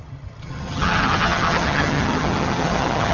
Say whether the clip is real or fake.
fake